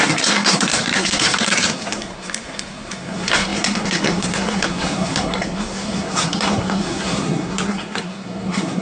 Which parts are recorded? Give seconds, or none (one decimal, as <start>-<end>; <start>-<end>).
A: none